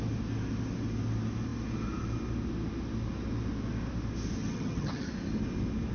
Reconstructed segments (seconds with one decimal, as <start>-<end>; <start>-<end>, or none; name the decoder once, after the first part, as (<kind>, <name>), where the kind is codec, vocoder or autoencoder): 4.4-5.1 (vocoder, HiFi-GAN)